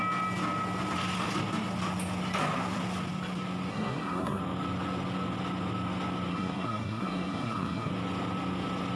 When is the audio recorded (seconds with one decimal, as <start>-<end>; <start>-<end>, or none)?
0.0-3.7; 4.4-6.3; 7.9-9.0